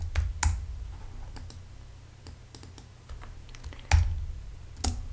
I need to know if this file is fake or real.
real